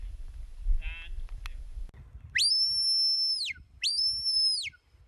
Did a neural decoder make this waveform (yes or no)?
no